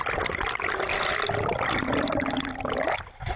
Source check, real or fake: real